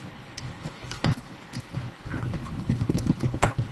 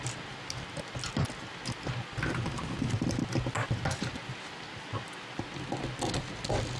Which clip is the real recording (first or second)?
second